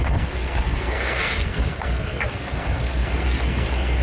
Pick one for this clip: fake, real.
fake